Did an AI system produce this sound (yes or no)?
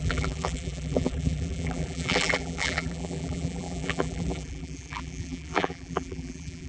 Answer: yes